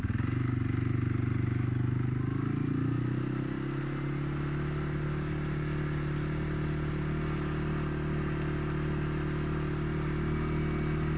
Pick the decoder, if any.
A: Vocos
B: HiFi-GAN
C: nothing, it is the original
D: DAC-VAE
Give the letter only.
C